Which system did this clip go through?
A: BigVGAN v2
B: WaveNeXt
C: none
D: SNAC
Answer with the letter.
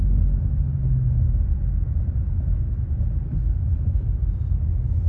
C